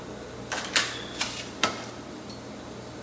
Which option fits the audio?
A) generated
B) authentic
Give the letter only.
B